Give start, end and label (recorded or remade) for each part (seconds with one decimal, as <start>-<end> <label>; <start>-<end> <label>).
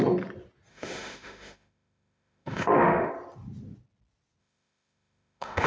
0.0-0.7 recorded; 0.7-3.1 remade; 3.1-4.4 recorded; 4.4-5.7 remade